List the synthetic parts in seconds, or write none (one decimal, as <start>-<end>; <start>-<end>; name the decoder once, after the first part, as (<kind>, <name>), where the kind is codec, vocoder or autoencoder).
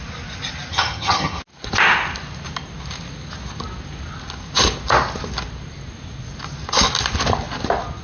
0.7-1.4 (vocoder, HiFi-GAN)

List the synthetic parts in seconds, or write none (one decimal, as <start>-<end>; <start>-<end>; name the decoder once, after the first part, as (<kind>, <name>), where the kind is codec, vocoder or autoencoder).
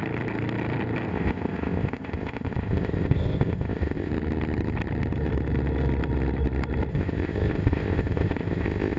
1.1-4.1 (codec, ZipCodec); 6.9-9.0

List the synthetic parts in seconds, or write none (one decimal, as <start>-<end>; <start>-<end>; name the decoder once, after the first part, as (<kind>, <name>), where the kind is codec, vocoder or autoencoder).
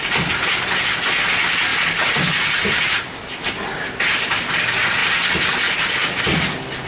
none